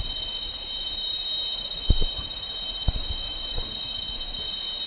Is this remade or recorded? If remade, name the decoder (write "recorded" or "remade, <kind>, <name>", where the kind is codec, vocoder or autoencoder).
recorded